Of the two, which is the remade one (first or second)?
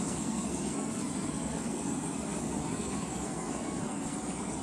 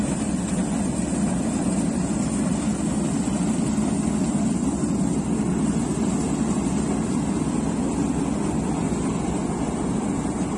first